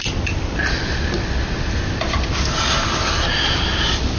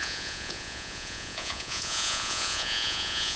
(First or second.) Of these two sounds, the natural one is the first